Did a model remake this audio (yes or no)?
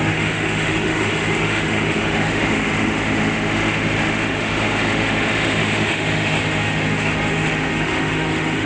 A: yes